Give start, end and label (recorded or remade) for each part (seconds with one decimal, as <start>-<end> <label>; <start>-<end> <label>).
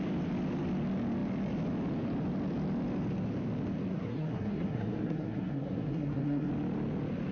0.0-3.9 recorded; 3.9-6.5 remade; 6.5-7.3 recorded